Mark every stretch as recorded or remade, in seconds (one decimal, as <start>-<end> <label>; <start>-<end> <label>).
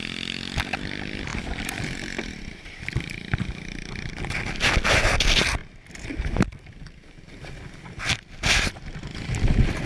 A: 0.0-1.3 recorded; 1.3-4.1 remade; 4.1-5.6 recorded; 5.6-7.5 remade; 7.5-9.9 recorded